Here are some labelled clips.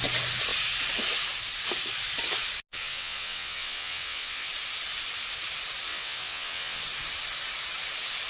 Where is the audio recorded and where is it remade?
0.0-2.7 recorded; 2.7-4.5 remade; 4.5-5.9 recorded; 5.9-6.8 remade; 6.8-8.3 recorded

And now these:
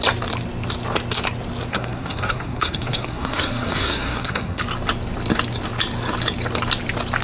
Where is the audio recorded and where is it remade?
0.0-1.7 recorded; 1.7-4.6 remade; 4.6-7.2 recorded

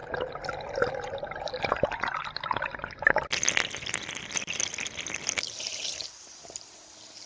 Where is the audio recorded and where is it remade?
0.0-7.3 recorded

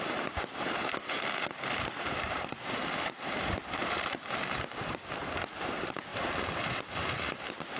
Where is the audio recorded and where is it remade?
0.0-7.8 remade

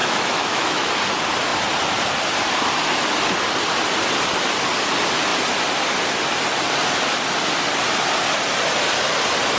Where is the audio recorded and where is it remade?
0.0-0.9 remade; 0.9-9.6 recorded

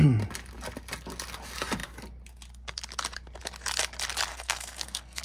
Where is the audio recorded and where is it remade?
0.0-4.3 recorded; 4.3-5.2 remade

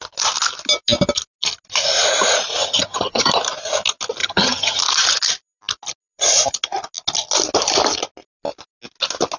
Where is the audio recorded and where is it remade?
0.0-2.6 recorded; 2.6-3.3 remade; 3.3-4.2 recorded; 4.2-4.8 remade; 4.8-9.4 recorded